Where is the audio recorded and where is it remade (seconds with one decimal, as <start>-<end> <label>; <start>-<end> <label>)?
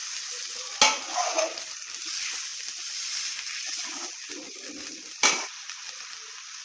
0.0-1.6 recorded; 1.6-6.6 remade